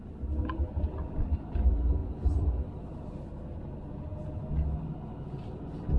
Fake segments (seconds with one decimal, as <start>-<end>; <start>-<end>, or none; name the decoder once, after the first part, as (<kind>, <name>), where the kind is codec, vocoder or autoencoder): 2.0-2.5 (vocoder, BigVGAN v2)